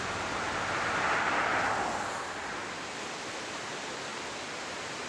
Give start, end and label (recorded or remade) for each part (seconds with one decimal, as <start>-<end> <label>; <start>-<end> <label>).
0.0-5.1 recorded